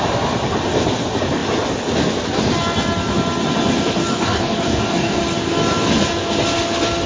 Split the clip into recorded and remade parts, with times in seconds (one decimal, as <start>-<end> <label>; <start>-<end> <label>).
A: 0.0-4.1 recorded; 4.1-5.2 remade; 5.2-7.1 recorded